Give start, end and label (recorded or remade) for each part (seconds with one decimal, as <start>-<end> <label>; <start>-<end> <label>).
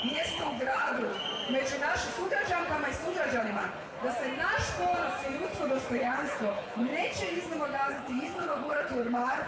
0.0-1.1 remade; 1.1-3.4 recorded; 3.4-4.0 remade; 4.0-5.9 recorded; 5.9-6.9 remade; 6.9-7.9 recorded; 7.9-9.5 remade